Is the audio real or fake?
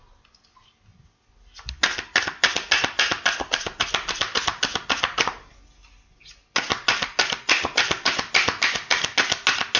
real